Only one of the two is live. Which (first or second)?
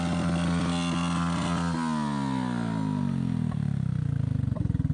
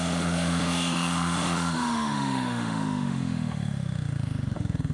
first